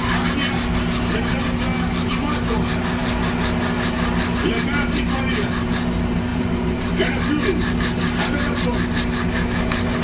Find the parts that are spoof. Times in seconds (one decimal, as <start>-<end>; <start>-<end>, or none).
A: 6.3-6.9